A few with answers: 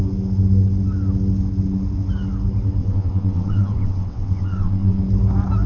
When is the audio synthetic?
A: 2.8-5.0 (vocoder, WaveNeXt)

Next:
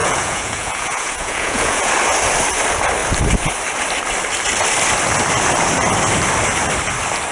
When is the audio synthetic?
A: 0.0-1.9 (vocoder, Vocos)

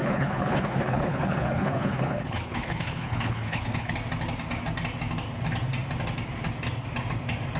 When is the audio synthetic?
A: 0.0-3.9 (codec, HILCodec)

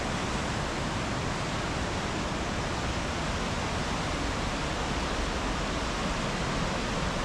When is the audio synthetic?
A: none